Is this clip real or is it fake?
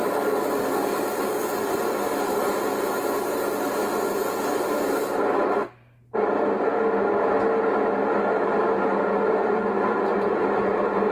real